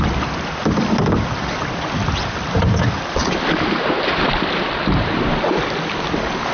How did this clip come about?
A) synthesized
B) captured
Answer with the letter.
A